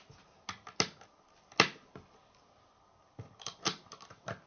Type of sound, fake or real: real